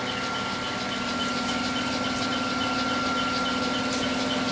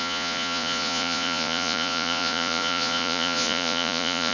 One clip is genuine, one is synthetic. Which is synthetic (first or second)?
second